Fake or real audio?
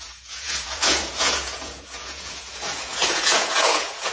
fake